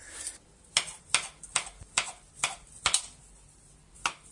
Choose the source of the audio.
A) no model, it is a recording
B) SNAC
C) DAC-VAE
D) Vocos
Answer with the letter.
A